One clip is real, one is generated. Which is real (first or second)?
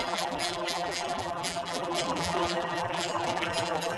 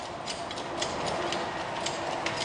second